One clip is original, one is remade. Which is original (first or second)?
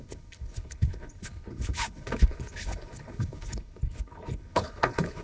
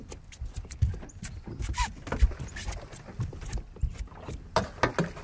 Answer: second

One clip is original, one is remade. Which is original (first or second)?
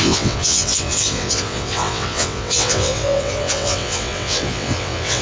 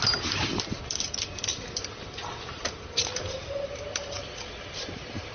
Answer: second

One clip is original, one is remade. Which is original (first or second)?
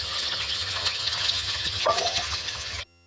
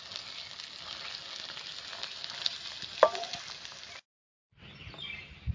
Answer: second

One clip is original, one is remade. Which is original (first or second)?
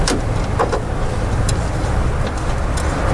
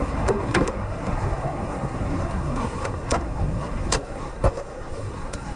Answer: first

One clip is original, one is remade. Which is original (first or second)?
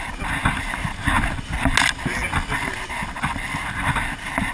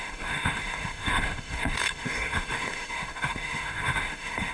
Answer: first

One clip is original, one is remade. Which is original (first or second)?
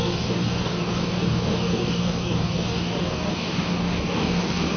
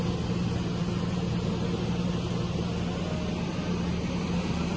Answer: second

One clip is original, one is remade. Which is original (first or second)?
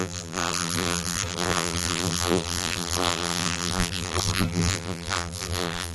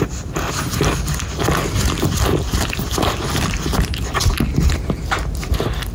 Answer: second